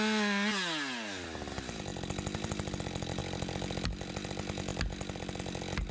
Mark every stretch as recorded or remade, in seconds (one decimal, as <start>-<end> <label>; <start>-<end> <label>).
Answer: 0.0-5.9 recorded